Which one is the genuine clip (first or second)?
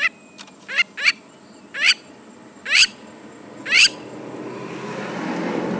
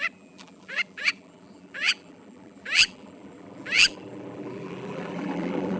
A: first